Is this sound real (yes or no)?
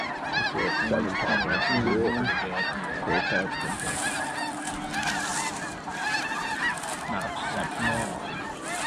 yes